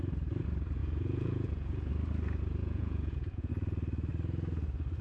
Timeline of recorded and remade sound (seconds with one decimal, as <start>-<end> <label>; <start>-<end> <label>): 0.0-0.8 recorded; 0.8-1.9 remade; 1.9-2.6 recorded; 2.6-3.5 remade; 3.5-5.0 recorded